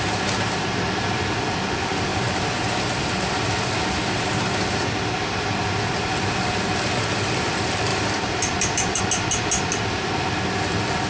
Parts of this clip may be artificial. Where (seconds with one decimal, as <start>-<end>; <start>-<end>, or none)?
7.9-9.0

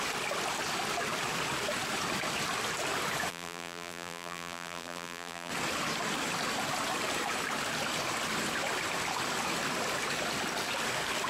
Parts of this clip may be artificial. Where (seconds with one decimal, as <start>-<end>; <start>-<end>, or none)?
3.3-5.5

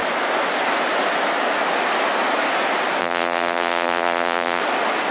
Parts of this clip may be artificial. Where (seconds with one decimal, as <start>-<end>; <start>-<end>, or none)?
3.0-4.6

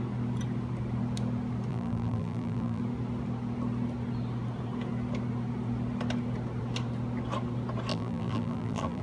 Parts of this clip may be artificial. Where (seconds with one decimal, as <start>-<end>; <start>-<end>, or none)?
1.7-2.8; 7.9-9.0

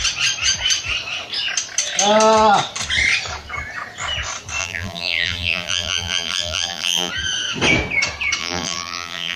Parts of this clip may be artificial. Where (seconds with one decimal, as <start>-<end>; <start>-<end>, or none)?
4.6-7.1; 8.4-9.4

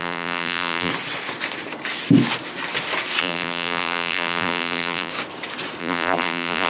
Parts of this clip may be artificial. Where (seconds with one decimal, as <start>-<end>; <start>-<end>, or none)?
0.0-0.9; 3.2-5.1; 5.8-6.7

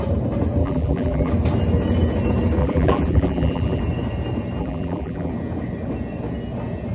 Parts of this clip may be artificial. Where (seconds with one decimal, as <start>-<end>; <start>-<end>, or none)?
0.6-1.3; 2.6-3.8; 4.6-5.3